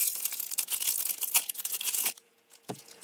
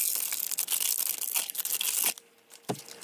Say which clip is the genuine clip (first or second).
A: second